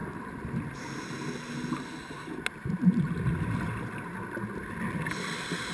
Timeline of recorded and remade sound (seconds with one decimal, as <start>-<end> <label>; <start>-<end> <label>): 0.0-5.7 recorded